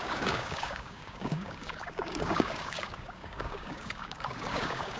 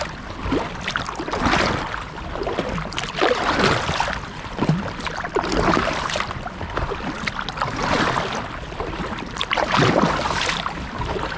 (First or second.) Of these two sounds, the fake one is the first